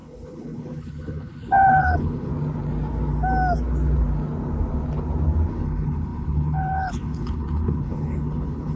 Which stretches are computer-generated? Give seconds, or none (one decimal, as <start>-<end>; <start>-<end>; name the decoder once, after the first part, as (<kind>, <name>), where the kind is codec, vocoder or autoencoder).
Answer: 0.0-2.3 (codec, HILCodec); 5.5-8.8